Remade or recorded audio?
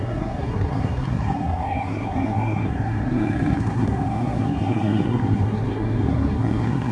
remade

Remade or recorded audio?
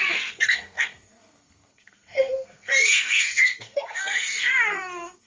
remade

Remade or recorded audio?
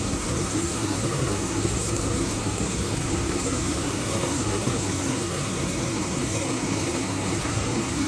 remade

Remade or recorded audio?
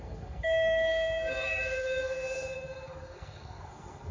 remade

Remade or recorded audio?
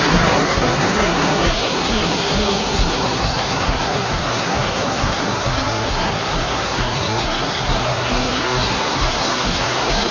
remade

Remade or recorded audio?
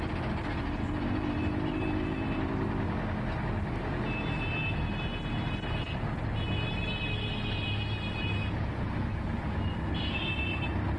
recorded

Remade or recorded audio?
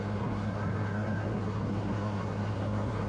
remade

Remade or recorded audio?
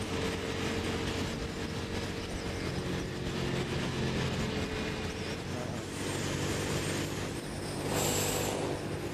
recorded